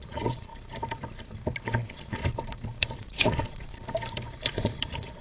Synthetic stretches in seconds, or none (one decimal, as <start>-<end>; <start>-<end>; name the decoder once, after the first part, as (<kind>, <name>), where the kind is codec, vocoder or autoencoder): 0.0-0.5 (vocoder, Vocos); 1.6-2.2; 2.8-3.7; 4.5-5.2